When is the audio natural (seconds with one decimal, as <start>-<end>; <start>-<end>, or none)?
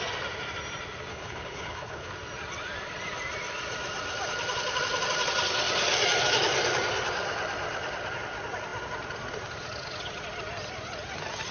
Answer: 0.0-1.1; 2.1-11.5